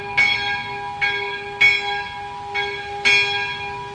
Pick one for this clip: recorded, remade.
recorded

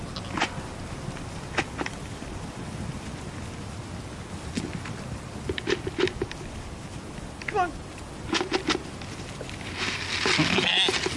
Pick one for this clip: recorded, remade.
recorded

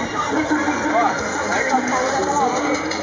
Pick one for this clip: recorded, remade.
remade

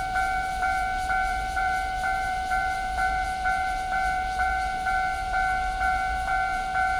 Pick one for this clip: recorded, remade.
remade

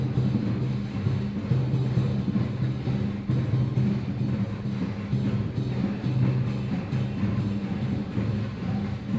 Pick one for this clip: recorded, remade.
recorded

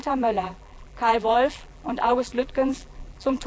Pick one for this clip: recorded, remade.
remade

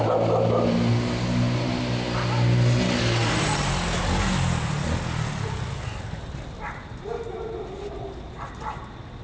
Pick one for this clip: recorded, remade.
recorded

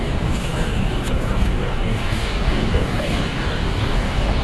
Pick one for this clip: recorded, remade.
remade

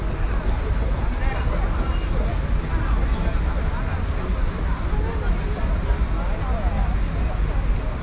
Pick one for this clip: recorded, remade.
recorded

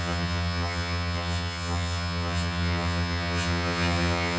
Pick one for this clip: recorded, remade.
remade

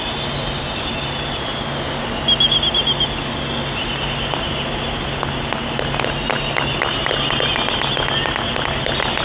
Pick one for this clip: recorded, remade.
recorded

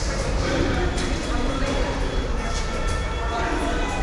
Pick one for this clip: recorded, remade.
remade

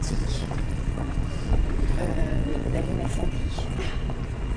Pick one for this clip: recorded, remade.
remade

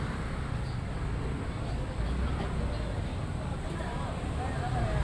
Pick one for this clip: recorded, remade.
recorded